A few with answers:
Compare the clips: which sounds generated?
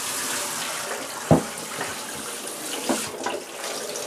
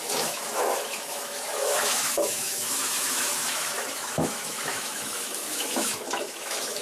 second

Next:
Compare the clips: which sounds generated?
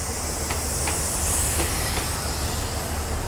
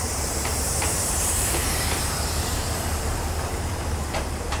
second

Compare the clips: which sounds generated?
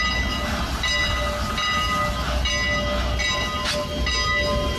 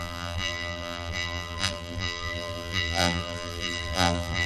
second